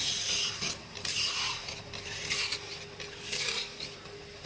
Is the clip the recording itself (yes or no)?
yes